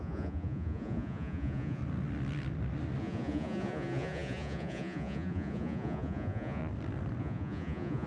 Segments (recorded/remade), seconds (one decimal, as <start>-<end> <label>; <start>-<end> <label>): 0.0-1.8 remade; 1.8-3.0 recorded; 3.0-6.6 remade; 6.6-7.2 recorded; 7.2-8.1 remade